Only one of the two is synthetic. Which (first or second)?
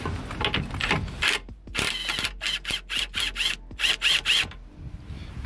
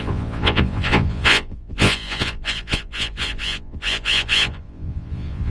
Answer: second